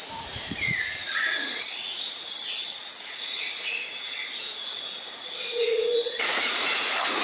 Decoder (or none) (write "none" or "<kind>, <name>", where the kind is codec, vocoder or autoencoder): vocoder, Vocos